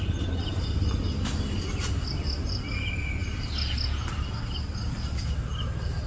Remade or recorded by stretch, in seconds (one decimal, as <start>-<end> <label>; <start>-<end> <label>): 0.0-6.1 recorded